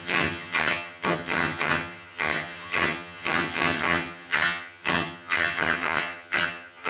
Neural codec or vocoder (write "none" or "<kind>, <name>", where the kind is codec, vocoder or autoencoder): vocoder, HiFi-GAN